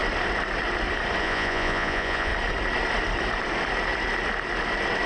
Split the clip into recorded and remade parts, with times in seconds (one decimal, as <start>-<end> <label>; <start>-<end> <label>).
0.0-1.2 recorded; 1.2-2.3 remade; 2.3-5.1 recorded